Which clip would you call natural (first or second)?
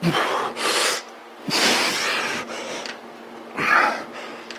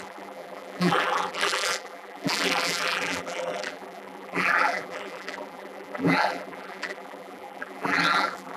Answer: first